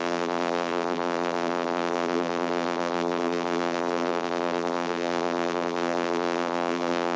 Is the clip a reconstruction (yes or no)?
yes